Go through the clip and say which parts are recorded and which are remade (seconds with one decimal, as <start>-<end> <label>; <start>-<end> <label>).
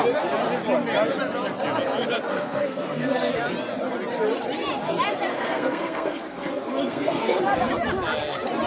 0.0-2.3 recorded; 2.3-3.3 remade; 3.3-5.3 recorded; 5.3-7.4 remade; 7.4-8.7 recorded